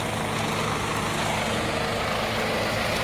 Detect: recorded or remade recorded